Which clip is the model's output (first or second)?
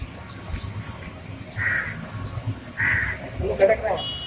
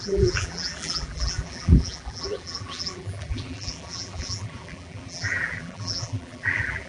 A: second